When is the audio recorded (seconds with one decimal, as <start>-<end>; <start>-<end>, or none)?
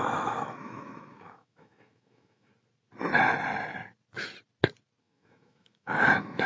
2.5-5.0